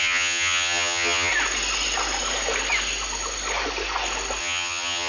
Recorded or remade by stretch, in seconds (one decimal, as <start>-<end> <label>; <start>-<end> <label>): 0.0-1.3 remade; 1.3-4.4 recorded; 4.4-5.1 remade